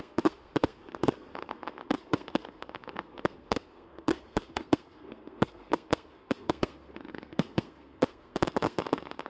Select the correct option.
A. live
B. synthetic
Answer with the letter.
B